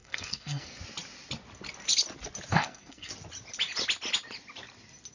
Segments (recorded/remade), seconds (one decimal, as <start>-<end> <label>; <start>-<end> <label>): 0.0-0.8 remade; 0.8-2.5 recorded; 2.5-3.1 remade; 3.1-5.1 recorded